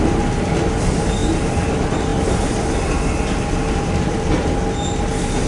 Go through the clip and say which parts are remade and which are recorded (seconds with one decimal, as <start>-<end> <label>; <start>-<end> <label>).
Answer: 0.0-5.5 recorded